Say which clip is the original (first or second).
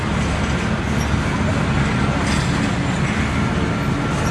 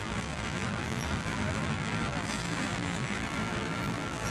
first